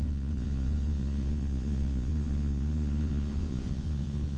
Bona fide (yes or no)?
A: no